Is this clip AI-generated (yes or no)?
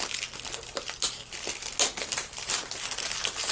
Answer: no